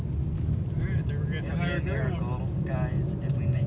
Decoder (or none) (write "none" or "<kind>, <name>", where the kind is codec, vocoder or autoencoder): none